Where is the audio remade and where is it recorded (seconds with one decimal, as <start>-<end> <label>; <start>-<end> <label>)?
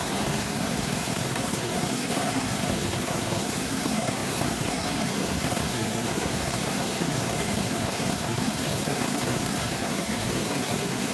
0.0-11.1 remade